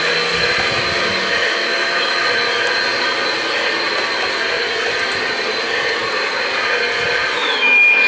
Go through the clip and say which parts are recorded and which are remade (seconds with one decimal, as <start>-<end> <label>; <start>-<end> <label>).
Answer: 0.0-1.1 recorded; 1.1-2.2 remade; 2.2-7.4 recorded; 7.4-8.1 remade